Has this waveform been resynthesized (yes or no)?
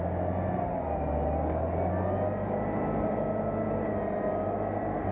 no